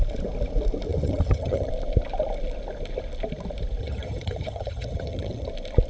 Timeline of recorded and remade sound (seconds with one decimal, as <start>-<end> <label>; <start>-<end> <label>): 0.0-0.9 recorded; 0.9-1.7 remade; 1.7-3.8 recorded; 3.8-5.5 remade; 5.5-5.9 recorded